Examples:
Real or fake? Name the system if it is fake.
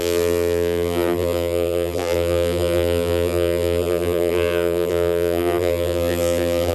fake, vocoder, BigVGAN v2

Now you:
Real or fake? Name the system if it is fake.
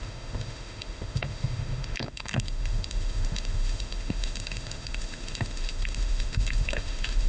fake, autoencoder, DAC-VAE